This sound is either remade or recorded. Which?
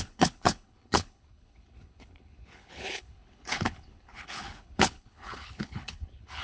remade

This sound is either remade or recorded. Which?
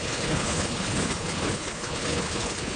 remade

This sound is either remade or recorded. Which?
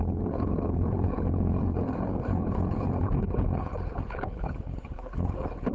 remade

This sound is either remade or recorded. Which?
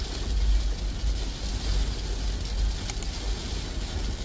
recorded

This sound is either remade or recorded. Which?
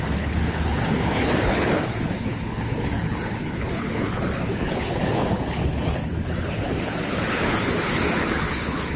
remade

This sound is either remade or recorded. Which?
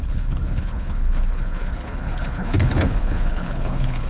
remade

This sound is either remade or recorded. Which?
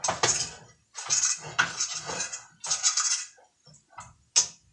recorded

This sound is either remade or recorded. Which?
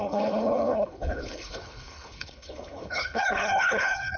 remade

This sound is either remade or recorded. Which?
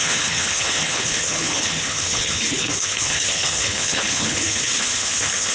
remade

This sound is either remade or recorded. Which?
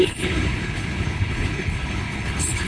remade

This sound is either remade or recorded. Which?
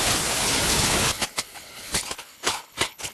remade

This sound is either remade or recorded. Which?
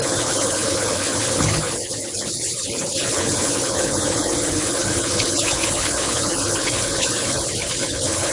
remade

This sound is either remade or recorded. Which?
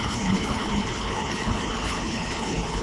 remade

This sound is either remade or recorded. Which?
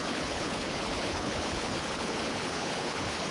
remade